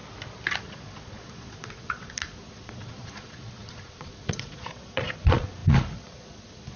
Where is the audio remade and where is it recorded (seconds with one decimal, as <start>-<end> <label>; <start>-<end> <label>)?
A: 0.0-0.6 recorded; 0.6-6.8 remade